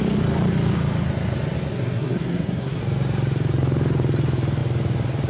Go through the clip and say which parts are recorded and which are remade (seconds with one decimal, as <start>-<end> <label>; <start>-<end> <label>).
0.0-1.7 recorded; 1.7-2.8 remade; 2.8-5.3 recorded